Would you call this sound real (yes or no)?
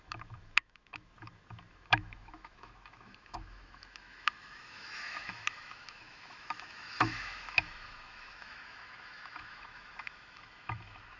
no